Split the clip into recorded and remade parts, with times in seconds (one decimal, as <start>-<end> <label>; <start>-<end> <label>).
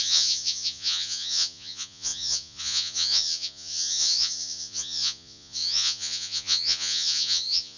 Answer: 0.0-7.8 remade